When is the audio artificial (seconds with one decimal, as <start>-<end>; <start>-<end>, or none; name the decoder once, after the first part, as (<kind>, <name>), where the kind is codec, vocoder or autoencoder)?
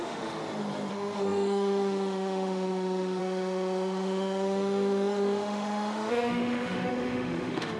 0.0-0.4 (autoencoder, DAC-VAE); 0.9-7.8